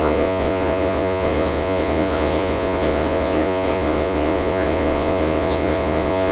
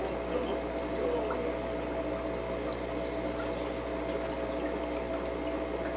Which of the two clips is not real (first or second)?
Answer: first